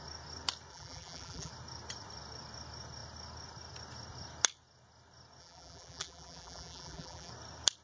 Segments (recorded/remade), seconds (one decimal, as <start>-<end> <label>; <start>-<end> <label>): 0.0-0.7 recorded; 0.7-1.5 remade; 1.5-5.4 recorded; 5.4-7.3 remade; 7.3-7.8 recorded